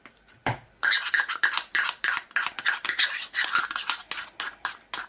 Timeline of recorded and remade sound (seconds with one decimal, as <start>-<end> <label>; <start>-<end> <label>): 0.0-0.4 recorded; 0.4-3.5 remade; 3.5-5.1 recorded